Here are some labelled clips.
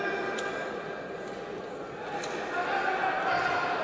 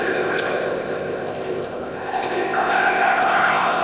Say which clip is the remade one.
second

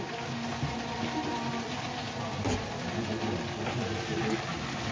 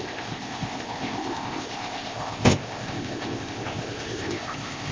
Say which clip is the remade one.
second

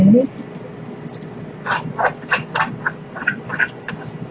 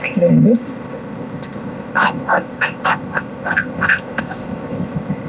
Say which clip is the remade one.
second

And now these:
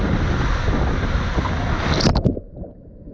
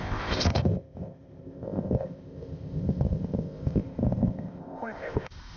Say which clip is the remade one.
second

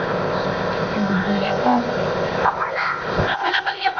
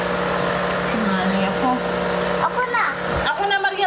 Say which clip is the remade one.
first